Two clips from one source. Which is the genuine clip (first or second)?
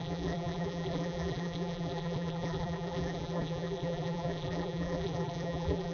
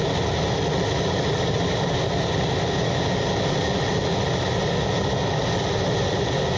second